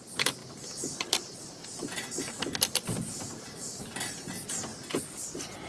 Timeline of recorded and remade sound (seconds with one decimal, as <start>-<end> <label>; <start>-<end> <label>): 0.0-0.4 recorded; 0.4-3.8 remade; 3.8-5.7 recorded